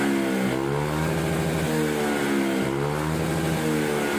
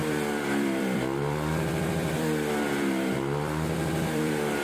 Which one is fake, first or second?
second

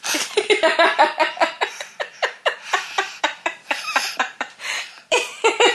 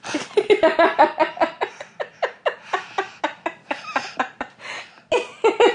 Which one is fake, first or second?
first